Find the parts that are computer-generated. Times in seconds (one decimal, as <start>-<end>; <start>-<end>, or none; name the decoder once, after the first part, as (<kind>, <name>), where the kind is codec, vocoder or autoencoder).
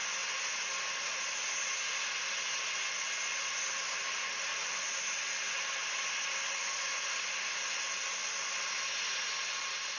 none